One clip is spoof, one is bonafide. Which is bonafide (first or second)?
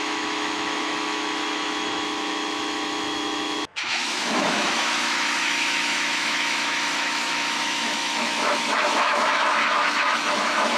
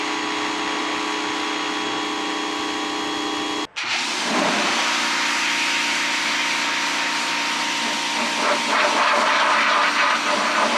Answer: second